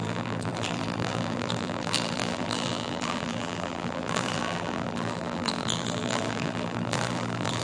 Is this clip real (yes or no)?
no